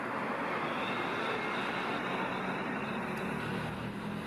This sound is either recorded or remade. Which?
recorded